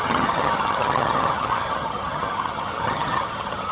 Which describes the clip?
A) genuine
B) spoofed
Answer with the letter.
B